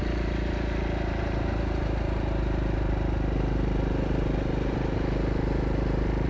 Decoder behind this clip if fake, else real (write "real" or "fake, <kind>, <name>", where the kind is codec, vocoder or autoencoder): real